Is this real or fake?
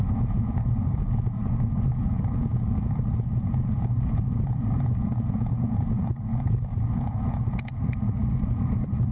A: fake